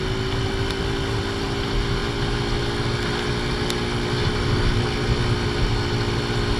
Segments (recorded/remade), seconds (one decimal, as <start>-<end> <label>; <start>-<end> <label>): 0.0-6.6 recorded